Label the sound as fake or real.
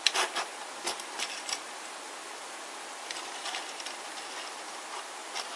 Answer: real